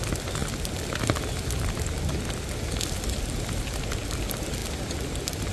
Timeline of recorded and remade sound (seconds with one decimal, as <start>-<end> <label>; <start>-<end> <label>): 0.0-5.5 recorded